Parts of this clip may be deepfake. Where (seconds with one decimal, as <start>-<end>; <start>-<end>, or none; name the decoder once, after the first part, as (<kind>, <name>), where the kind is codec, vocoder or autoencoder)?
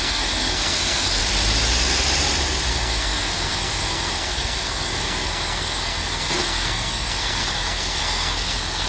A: 0.0-1.2 (codec, SNAC); 2.7-8.9